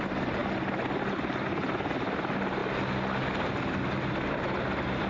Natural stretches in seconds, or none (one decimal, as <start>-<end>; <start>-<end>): 0.0-5.1